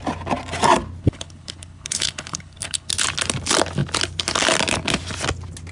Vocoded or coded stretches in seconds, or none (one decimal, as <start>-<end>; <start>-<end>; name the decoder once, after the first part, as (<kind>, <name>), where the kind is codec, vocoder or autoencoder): 1.0-2.9 (codec, HILCodec)